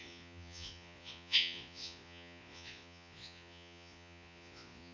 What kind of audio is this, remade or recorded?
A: remade